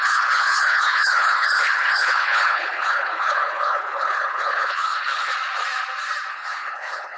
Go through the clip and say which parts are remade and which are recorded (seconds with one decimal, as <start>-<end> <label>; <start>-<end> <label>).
0.0-5.3 remade; 5.3-6.3 recorded; 6.3-7.2 remade